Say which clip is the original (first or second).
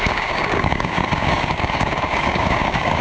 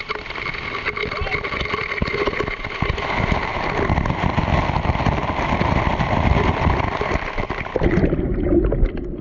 second